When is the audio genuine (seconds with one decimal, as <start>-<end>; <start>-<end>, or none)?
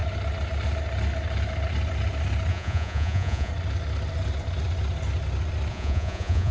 0.0-2.5; 3.5-5.7